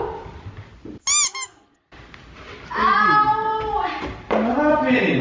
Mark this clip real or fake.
real